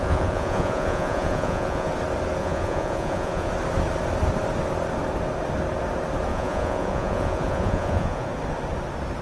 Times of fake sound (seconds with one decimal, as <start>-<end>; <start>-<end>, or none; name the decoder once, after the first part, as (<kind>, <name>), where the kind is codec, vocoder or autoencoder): 0.0-1.9 (vocoder, Vocos); 2.4-3.5; 6.3-8.3